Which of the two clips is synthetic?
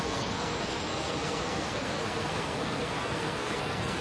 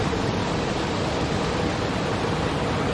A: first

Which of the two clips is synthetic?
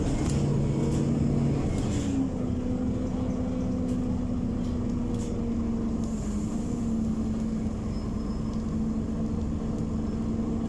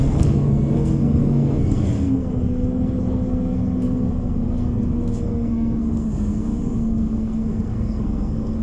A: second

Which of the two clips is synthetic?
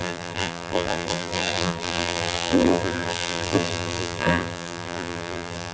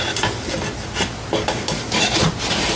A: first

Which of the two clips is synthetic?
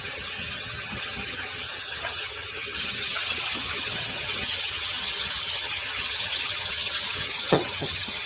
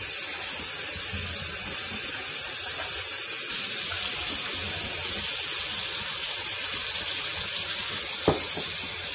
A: first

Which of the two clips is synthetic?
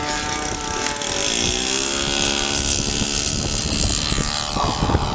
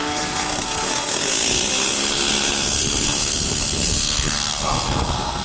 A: second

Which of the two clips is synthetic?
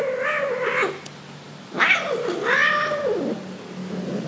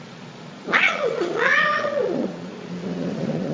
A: second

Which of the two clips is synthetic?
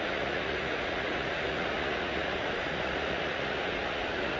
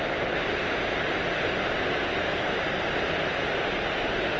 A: first